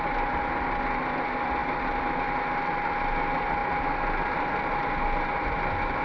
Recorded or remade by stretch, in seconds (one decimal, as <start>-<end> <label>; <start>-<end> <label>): 0.0-1.6 recorded; 1.6-2.1 remade; 2.1-6.0 recorded